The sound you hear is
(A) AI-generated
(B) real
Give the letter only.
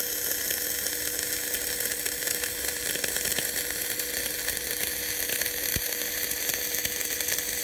B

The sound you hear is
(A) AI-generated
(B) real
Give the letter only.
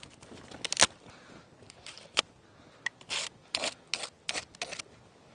B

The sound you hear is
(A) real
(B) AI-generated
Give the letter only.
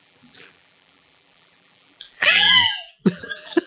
B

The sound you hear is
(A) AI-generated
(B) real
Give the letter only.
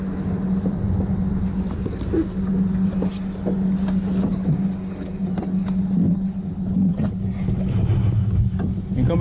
B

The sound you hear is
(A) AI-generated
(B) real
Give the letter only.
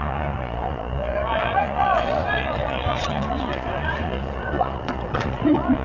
A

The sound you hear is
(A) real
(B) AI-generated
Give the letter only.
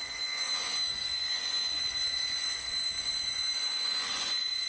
B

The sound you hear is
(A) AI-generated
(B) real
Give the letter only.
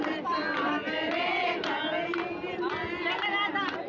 B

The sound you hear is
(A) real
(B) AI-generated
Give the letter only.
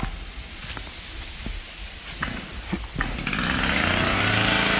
A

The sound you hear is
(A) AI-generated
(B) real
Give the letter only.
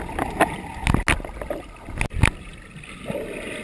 B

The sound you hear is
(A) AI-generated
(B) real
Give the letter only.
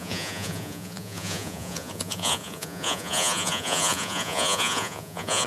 A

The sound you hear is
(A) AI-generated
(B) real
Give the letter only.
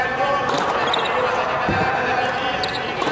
B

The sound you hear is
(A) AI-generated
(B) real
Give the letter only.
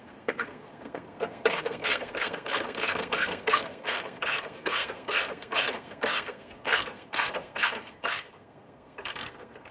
A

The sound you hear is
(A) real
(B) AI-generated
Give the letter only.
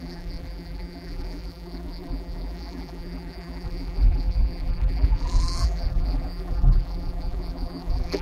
B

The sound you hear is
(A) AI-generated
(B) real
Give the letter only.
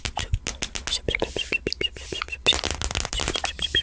B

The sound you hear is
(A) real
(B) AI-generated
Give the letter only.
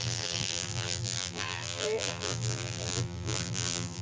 B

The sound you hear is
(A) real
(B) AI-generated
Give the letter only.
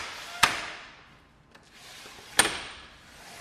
A